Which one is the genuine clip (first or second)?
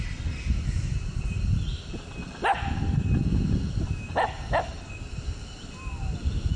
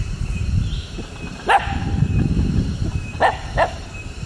first